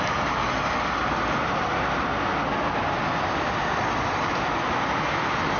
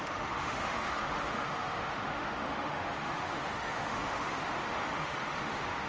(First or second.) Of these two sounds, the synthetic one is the second